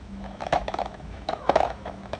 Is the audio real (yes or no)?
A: no